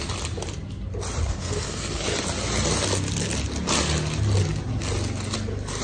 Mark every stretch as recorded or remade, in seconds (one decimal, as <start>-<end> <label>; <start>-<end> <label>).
0.0-1.2 recorded; 1.2-2.0 remade; 2.0-5.8 recorded